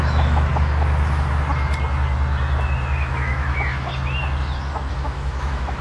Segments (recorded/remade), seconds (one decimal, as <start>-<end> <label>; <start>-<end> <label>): 0.0-0.5 remade; 0.5-3.1 recorded; 3.1-3.9 remade; 3.9-4.9 recorded; 4.9-5.8 remade